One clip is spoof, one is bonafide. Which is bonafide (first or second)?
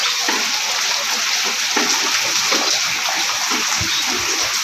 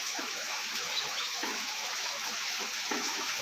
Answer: first